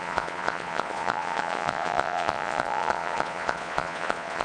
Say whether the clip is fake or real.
fake